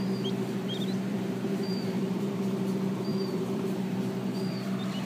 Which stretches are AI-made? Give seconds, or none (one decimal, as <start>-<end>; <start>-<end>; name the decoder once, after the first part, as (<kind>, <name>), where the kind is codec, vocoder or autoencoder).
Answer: 1.1-2.4 (vocoder, BigVGAN v2); 3.1-4.0